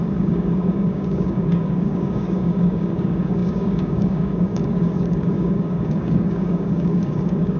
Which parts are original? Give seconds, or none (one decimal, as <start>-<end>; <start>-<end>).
none